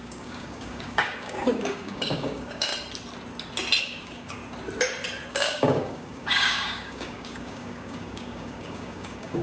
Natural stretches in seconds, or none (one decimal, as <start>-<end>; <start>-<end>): 2.7-3.8; 4.4-5.3